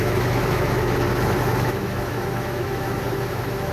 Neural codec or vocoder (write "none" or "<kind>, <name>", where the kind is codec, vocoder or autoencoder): autoencoder, DAC-VAE